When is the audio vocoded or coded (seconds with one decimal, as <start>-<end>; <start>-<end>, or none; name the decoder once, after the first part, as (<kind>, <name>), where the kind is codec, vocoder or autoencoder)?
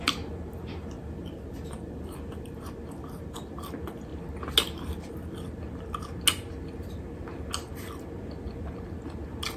none